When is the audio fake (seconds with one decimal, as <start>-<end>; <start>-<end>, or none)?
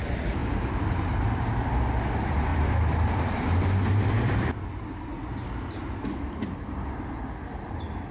0.4-1.0; 2.5-6.9